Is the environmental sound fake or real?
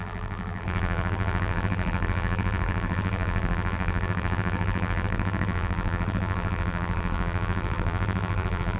fake